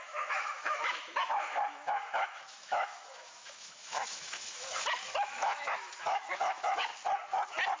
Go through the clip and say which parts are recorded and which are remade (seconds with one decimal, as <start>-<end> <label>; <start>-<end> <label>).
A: 0.0-6.9 remade; 6.9-7.8 recorded